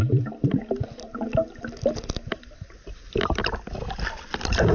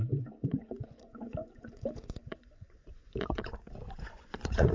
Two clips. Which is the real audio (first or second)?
first